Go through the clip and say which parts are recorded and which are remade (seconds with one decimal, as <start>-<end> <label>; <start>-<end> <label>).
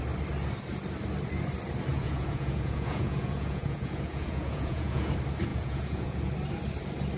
0.0-1.9 recorded; 1.9-5.1 remade; 5.1-5.5 recorded; 5.5-6.2 remade; 6.2-7.2 recorded